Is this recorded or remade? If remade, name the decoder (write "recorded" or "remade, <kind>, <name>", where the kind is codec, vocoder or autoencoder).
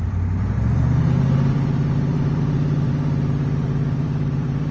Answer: remade, vocoder, BigVGAN v2